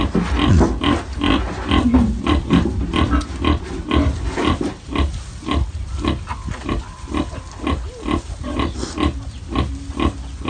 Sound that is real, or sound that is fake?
real